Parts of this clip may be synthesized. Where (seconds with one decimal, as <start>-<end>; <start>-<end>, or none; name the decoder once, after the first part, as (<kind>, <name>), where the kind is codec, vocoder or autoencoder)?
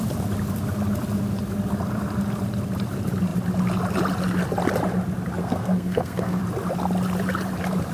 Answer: 5.4-6.4 (codec, SNAC)